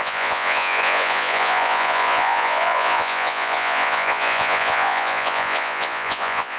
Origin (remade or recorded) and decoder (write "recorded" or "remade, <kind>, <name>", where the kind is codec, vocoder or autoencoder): remade, vocoder, Vocos